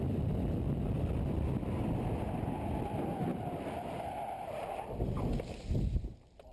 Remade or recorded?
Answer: recorded